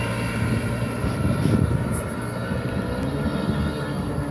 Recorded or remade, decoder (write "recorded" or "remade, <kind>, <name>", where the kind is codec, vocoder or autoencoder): recorded